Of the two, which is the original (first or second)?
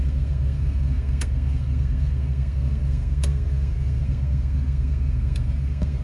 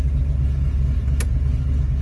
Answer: second